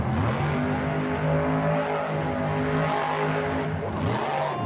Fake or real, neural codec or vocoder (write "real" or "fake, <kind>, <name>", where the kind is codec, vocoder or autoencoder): real